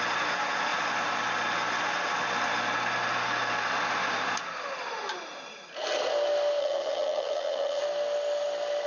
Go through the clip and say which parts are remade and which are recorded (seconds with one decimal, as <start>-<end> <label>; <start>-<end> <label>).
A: 0.0-6.6 recorded; 6.6-7.8 remade; 7.8-8.9 recorded